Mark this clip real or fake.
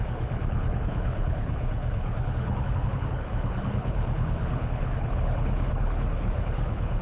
fake